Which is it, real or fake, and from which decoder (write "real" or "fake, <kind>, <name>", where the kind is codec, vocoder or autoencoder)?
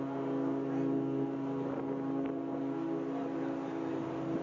real